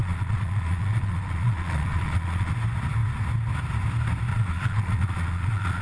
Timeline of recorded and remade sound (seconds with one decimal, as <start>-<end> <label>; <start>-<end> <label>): 0.0-2.5 remade; 2.5-4.3 recorded; 4.3-5.8 remade